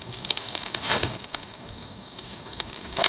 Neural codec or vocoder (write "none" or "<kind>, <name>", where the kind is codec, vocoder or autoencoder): codec, DAC